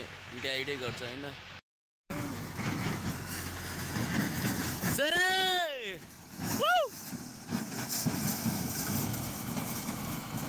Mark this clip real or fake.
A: fake